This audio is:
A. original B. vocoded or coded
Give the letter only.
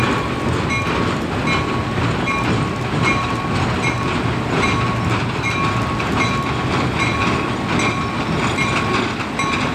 A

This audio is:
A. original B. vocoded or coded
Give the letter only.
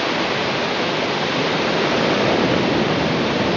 B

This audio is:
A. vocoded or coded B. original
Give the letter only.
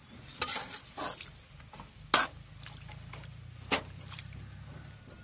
B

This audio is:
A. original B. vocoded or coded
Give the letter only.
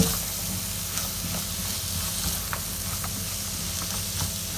A